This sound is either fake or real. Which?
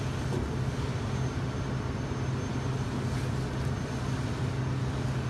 real